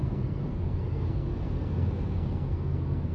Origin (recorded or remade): remade